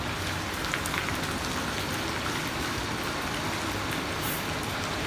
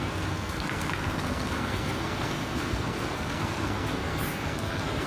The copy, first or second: second